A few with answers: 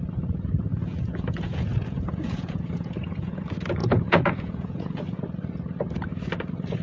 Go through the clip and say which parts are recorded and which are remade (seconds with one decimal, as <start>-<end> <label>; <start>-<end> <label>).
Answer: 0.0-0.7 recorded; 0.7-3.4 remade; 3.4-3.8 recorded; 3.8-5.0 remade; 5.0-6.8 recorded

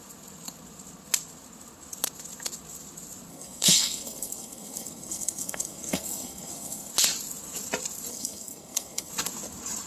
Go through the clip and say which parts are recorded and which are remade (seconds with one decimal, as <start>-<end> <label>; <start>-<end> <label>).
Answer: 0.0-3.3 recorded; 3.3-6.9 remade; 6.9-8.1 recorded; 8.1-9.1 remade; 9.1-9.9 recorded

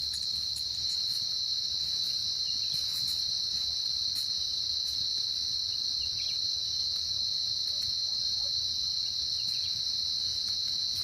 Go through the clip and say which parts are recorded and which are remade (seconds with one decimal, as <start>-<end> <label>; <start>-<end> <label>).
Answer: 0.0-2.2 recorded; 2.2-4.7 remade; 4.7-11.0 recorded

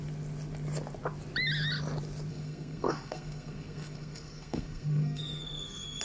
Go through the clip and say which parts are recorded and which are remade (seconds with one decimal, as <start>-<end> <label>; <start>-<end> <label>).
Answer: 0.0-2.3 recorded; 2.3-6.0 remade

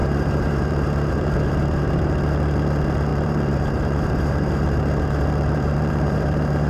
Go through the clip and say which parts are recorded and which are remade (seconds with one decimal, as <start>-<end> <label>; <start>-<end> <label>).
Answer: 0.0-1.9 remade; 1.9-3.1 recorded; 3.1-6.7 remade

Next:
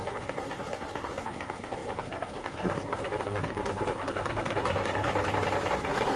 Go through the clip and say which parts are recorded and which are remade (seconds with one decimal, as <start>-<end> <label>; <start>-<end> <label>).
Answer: 0.0-5.1 remade; 5.1-5.8 recorded; 5.8-6.2 remade

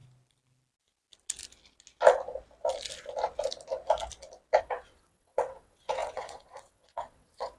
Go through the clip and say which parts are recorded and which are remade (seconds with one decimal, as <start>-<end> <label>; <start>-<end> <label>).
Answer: 0.0-4.6 recorded; 4.6-7.6 remade

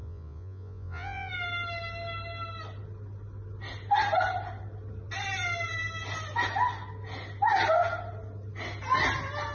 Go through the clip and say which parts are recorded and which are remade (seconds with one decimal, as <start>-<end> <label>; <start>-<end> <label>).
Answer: 0.0-1.3 remade; 1.3-9.5 recorded